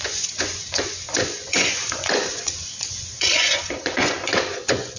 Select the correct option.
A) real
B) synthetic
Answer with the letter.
B